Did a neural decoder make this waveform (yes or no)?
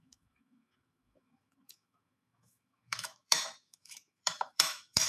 yes